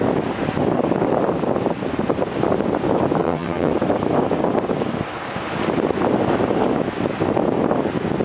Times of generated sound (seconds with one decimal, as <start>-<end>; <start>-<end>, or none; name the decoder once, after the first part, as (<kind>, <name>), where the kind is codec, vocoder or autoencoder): 3.2-3.7 (vocoder, HiFi-GAN)